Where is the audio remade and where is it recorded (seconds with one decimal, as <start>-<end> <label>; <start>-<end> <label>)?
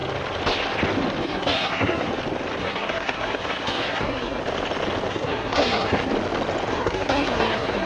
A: 0.0-1.2 recorded; 1.2-2.1 remade; 2.1-2.6 recorded; 2.6-4.4 remade; 4.4-5.1 recorded; 5.1-6.1 remade; 6.1-6.7 recorded; 6.7-7.9 remade